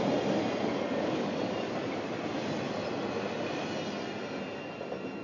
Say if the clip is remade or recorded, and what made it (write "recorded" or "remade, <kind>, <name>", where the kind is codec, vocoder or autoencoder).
recorded